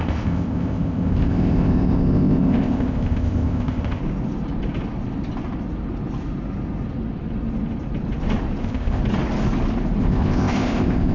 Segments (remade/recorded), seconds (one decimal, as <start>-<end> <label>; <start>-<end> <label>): 0.0-4.0 remade; 4.0-8.6 recorded; 8.6-9.0 remade; 9.0-10.0 recorded; 10.0-11.1 remade